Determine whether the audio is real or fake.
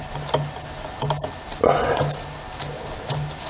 real